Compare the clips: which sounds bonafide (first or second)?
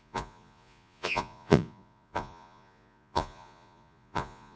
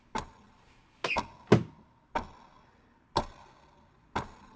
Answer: second